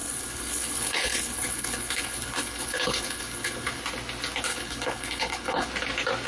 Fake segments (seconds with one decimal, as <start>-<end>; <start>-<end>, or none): 0.0-3.8; 4.5-5.7